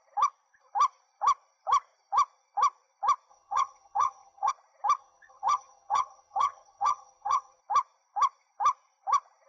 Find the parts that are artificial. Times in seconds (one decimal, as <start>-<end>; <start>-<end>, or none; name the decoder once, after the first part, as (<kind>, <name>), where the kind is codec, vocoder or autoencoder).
3.3-4.5 (vocoder, HiFi-GAN); 5.0-7.6